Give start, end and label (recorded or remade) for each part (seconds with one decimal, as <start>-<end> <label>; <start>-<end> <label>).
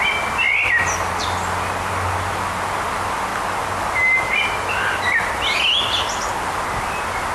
0.0-7.3 recorded